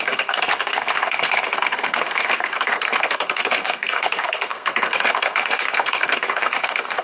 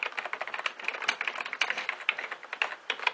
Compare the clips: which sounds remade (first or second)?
first